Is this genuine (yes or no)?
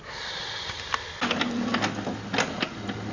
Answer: yes